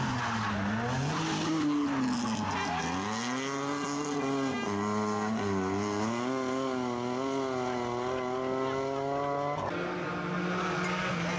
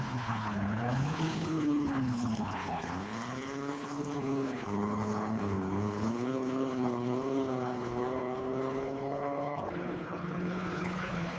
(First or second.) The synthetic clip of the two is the second